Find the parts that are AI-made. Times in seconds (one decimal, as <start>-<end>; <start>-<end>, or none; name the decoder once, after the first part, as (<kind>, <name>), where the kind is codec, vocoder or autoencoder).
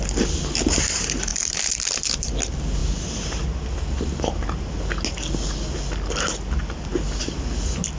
none